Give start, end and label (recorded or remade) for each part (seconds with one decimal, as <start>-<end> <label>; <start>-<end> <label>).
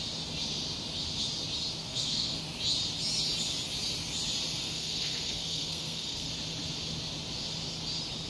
0.0-1.8 recorded; 1.8-2.4 remade; 2.4-4.6 recorded; 4.6-6.3 remade; 6.3-8.3 recorded